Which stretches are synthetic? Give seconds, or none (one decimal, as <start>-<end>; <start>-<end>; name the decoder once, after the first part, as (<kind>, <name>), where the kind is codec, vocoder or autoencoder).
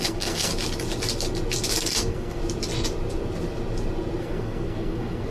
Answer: 0.0-0.5 (codec, SNAC); 1.8-2.4; 4.2-5.3